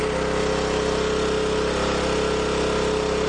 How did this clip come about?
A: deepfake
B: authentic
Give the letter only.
B